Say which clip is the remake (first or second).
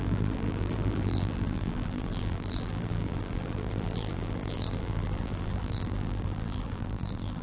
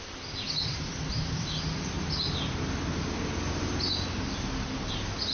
first